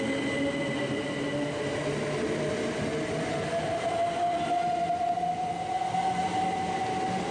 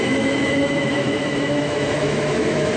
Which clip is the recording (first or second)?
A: first